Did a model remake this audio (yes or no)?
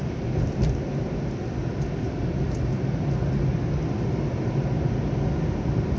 no